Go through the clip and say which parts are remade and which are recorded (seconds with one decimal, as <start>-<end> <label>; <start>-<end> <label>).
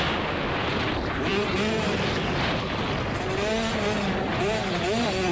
0.0-5.3 recorded